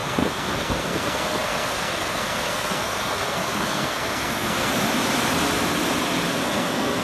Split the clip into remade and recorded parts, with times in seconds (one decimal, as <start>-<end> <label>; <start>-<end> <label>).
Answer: 0.0-4.7 remade; 4.7-6.3 recorded; 6.3-7.0 remade